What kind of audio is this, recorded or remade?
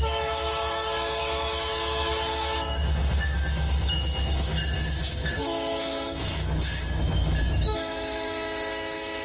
remade